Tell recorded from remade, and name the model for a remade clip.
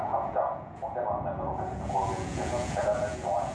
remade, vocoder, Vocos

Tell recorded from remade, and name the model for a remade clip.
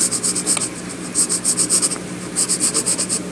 recorded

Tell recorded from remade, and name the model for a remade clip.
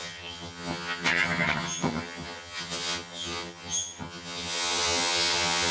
remade, vocoder, HiFi-GAN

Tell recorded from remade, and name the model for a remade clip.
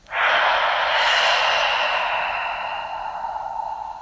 recorded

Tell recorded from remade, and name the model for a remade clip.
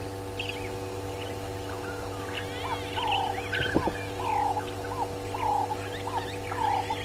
recorded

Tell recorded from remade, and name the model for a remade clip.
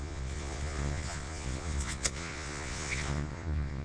remade, vocoder, Vocos